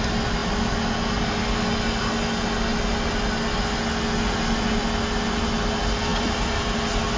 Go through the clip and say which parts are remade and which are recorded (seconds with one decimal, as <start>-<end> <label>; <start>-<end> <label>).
0.0-6.1 recorded; 6.1-6.6 remade; 6.6-7.2 recorded